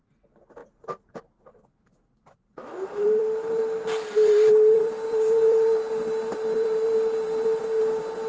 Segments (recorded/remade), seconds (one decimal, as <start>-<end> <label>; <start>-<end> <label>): 0.0-3.0 recorded; 3.0-7.6 remade; 7.6-8.3 recorded